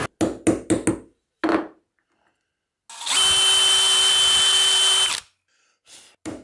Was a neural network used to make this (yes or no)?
no